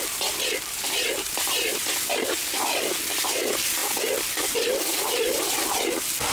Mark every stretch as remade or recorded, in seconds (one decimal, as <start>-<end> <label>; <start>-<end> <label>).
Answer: 0.0-2.4 remade; 2.4-3.0 recorded; 3.0-3.8 remade; 3.8-5.0 recorded; 5.0-6.3 remade